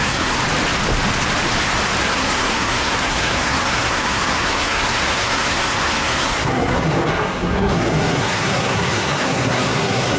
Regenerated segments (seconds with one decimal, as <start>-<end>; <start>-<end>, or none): 0.0-0.4; 2.0-10.2